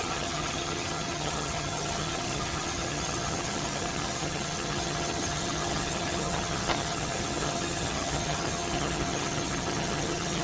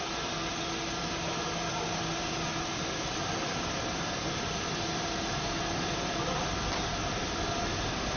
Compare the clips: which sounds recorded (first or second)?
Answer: second